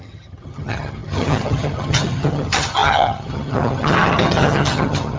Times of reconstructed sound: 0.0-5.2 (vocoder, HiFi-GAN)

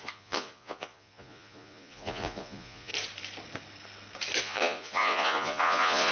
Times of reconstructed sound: 0.0-2.9 (vocoder, Vocos); 4.4-6.1

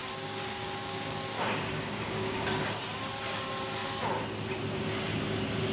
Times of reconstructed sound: 0.0-2.8 (codec, DAC)

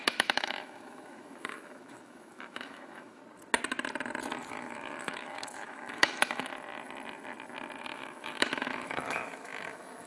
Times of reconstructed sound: 0.0-3.2 (autoencoder, DAC-VAE); 4.5-6.5; 7.8-10.1

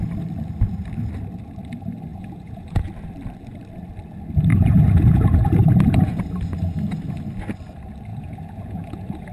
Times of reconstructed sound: 2.1-2.9 (vocoder, Vocos); 4.5-6.2; 8.1-9.3

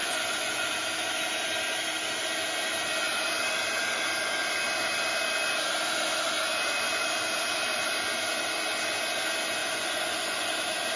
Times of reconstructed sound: 0.0-0.7 (vocoder, Vocos); 9.6-10.5

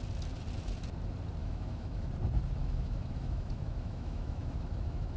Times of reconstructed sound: 1.4-2.1 (autoencoder, DAC-VAE); 2.6-5.2

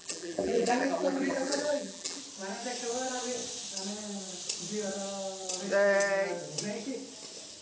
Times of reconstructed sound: 0.0-2.2 (vocoder, BigVGAN v2)